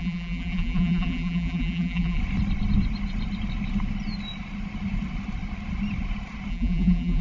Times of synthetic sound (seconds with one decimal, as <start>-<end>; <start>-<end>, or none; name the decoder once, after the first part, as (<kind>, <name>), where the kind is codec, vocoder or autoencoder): 0.0-2.2 (vocoder, BigVGAN v2); 6.5-7.2